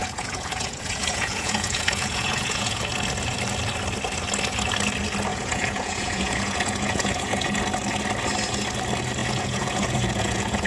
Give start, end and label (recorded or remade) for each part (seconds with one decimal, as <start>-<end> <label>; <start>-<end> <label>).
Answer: 0.0-2.8 remade; 2.8-5.3 recorded; 5.3-7.6 remade; 7.6-9.2 recorded; 9.2-10.7 remade